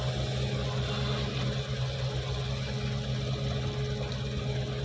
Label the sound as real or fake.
real